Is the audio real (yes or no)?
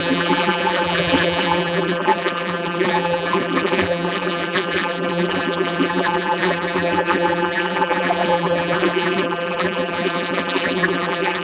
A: no